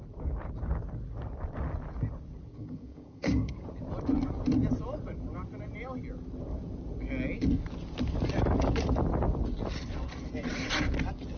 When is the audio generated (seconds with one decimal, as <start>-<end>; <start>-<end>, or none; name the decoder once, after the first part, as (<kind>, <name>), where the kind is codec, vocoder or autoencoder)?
2.5-3.6 (codec, DAC)